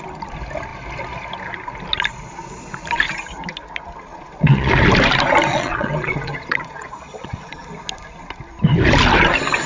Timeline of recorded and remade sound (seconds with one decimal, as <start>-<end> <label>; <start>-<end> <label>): 0.0-4.1 recorded; 4.1-4.7 remade; 4.7-5.5 recorded; 5.5-7.7 remade; 7.7-9.7 recorded